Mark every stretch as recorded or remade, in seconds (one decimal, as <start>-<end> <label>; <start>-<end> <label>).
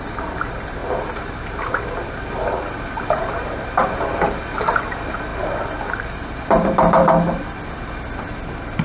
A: 0.0-8.8 remade